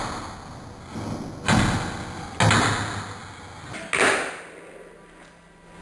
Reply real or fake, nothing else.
real